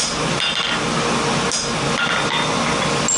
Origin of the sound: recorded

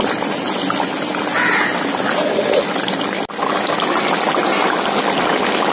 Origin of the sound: recorded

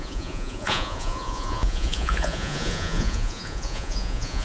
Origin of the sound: remade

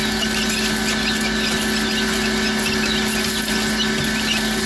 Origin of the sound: recorded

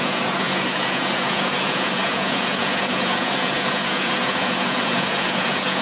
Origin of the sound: remade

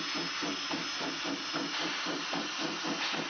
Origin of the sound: recorded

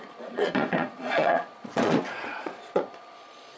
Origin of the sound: remade